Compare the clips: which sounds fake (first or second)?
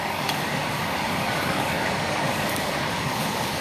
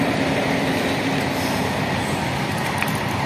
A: first